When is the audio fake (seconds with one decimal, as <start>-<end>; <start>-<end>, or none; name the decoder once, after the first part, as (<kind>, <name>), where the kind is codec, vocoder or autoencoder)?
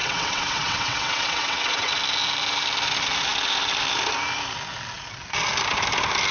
0.0-1.9 (vocoder, WaveNeXt)